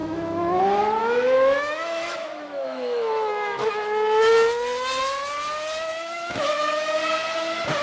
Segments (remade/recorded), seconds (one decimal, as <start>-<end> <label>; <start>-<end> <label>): 0.0-0.6 remade; 0.6-1.0 recorded; 1.0-3.7 remade; 3.7-5.9 recorded; 5.9-7.0 remade; 7.0-7.8 recorded